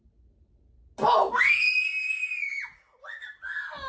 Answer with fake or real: real